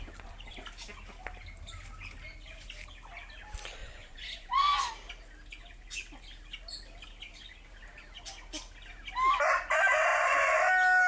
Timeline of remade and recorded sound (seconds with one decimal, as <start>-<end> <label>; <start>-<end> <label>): 0.0-3.8 recorded; 3.8-4.9 remade; 4.9-10.1 recorded; 10.1-10.6 remade; 10.6-11.1 recorded

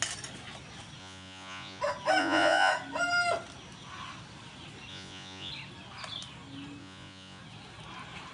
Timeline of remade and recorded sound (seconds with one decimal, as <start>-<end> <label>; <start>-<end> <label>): 0.0-1.0 recorded; 1.0-1.8 remade; 1.8-2.2 recorded; 2.2-2.7 remade; 2.7-4.9 recorded; 4.9-5.5 remade; 5.5-6.8 recorded; 6.8-7.4 remade; 7.4-8.3 recorded

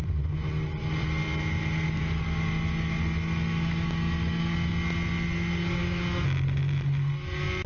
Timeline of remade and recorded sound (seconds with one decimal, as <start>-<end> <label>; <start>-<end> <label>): 0.0-7.7 recorded